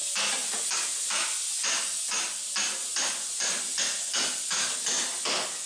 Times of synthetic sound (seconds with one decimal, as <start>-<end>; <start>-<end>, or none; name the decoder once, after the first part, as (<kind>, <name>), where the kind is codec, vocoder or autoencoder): none